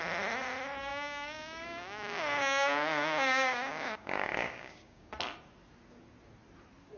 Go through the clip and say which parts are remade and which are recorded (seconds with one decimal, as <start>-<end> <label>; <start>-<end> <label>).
0.0-0.9 recorded; 0.9-5.1 remade; 5.1-7.0 recorded